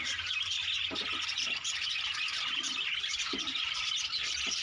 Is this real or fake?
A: real